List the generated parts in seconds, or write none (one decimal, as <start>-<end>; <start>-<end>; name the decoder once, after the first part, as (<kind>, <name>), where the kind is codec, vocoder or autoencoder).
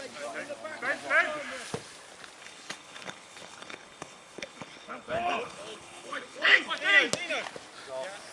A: 2.4-6.7 (codec, HILCodec)